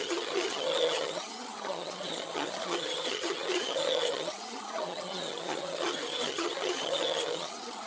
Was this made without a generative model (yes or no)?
no